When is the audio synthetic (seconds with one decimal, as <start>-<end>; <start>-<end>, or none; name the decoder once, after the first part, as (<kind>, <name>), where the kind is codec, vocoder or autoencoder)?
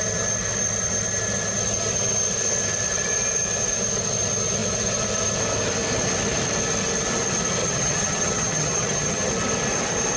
7.6-9.3 (vocoder, HiFi-GAN)